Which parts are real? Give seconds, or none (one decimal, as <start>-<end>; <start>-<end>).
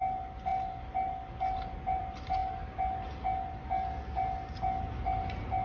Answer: 0.0-5.6